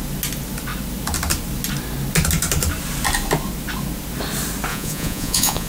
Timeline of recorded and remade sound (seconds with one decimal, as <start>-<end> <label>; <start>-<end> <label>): 0.0-4.7 recorded; 4.7-5.7 remade